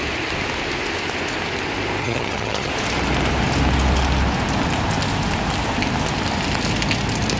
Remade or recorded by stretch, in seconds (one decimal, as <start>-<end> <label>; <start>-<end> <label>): 0.0-2.0 recorded; 2.0-2.7 remade; 2.7-7.4 recorded

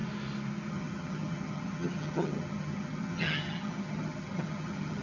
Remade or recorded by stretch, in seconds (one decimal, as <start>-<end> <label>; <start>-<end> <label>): 0.0-0.7 recorded; 0.7-5.0 remade

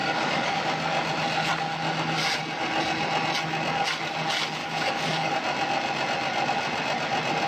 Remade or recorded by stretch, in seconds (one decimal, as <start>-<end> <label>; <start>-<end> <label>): 0.0-0.6 remade; 0.6-4.6 recorded; 4.6-5.3 remade; 5.3-7.5 recorded

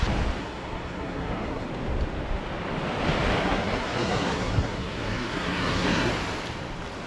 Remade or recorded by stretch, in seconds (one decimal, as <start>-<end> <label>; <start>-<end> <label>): 0.0-0.4 recorded; 0.4-1.7 remade; 1.7-3.4 recorded; 3.4-6.1 remade; 6.1-7.1 recorded

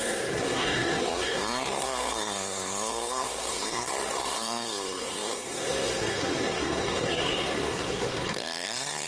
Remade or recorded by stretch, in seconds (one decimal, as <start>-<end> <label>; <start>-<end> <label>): 0.0-9.1 remade

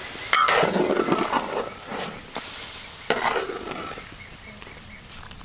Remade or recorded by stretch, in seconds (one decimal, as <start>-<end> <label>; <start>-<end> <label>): 0.0-1.9 recorded; 1.9-5.4 remade

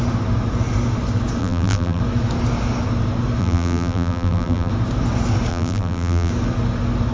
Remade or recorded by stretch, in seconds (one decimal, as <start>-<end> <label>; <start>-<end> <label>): 0.0-1.4 recorded; 1.4-2.0 remade; 2.0-3.4 recorded; 3.4-4.7 remade; 4.7-5.5 recorded; 5.5-6.3 remade; 6.3-7.1 recorded

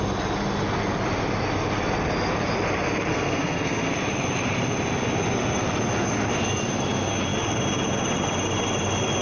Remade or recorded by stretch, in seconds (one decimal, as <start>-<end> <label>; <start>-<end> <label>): 0.0-3.1 recorded; 3.1-3.9 remade; 3.9-9.2 recorded